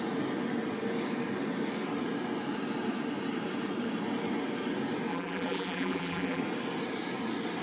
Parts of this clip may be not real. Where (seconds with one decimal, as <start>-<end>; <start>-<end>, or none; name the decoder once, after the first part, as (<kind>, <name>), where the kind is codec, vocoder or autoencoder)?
5.1-6.4 (vocoder, BigVGAN v2)